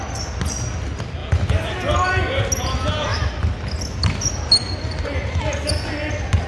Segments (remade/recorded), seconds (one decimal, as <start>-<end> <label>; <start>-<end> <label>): 0.0-6.5 recorded